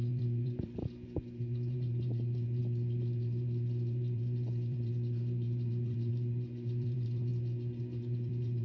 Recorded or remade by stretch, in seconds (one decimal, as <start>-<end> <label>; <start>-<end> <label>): 0.0-7.3 remade; 7.3-7.8 recorded; 7.8-8.6 remade